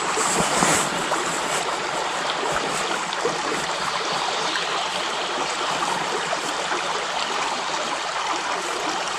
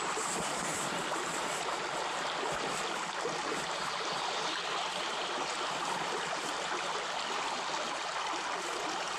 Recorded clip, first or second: second